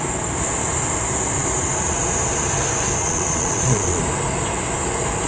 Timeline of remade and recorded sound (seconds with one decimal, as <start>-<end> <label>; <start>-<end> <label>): 0.0-3.0 recorded; 3.0-4.0 remade; 4.0-5.3 recorded

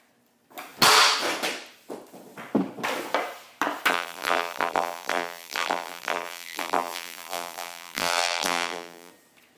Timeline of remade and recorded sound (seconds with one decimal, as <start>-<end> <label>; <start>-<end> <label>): 0.0-3.9 recorded; 3.9-9.1 remade; 9.1-9.6 recorded

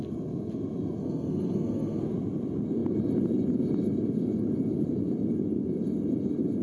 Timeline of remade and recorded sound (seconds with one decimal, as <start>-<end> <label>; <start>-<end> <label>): 0.0-1.0 recorded; 1.0-2.0 remade; 2.0-6.6 recorded